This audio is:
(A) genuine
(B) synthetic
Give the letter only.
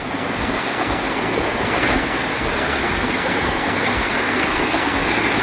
B